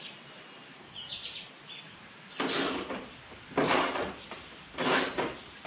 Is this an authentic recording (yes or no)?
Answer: yes